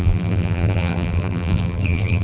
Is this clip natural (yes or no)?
no